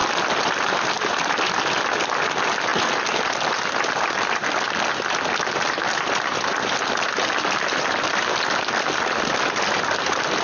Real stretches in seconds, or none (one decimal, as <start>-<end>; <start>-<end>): 0.0-10.4